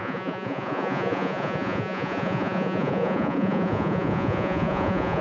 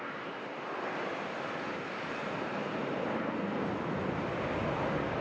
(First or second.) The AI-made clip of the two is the first